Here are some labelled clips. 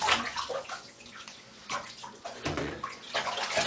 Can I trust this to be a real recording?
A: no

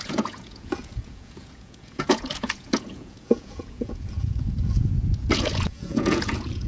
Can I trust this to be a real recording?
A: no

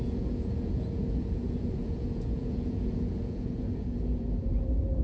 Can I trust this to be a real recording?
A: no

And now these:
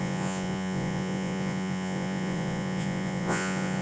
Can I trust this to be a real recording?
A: no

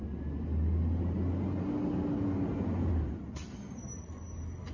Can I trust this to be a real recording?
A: yes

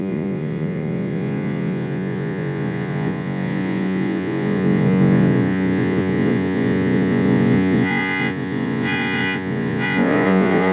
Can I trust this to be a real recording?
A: no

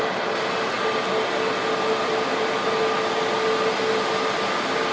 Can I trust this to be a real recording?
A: yes